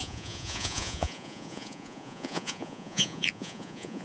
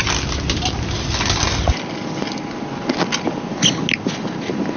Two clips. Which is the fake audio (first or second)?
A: first